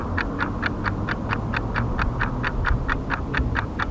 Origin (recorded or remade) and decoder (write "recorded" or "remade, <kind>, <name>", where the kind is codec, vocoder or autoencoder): recorded